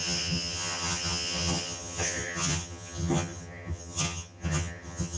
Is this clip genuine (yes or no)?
no